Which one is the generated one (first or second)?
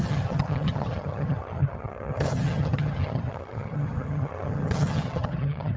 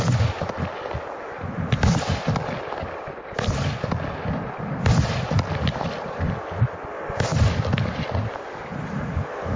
first